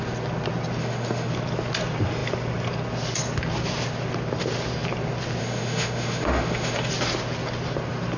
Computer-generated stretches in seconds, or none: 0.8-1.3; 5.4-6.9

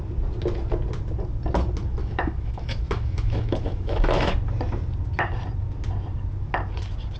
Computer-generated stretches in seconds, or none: 2.0-4.3

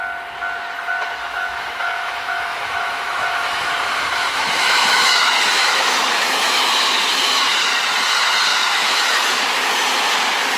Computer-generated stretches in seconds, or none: 1.2-3.7; 4.2-7.4; 8.5-9.3

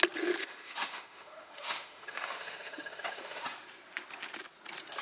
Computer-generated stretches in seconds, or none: 0.4-3.4

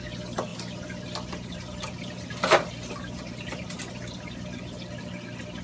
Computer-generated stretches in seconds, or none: none

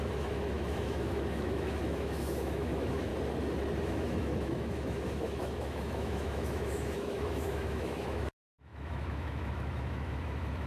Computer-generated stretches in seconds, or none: 0.0-3.1; 3.8-10.7